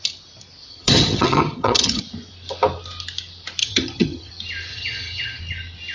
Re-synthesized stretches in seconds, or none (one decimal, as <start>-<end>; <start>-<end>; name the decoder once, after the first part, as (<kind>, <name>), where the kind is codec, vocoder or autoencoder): 0.7-2.0 (vocoder, HiFi-GAN); 3.6-4.3; 4.7-5.4